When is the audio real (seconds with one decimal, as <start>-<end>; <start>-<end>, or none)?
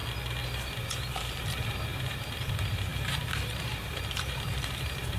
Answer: 0.0-0.7